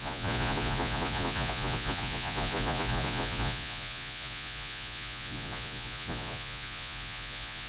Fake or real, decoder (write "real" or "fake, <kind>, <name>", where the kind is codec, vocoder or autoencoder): fake, vocoder, Vocos